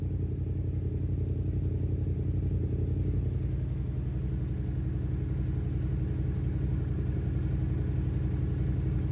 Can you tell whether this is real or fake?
real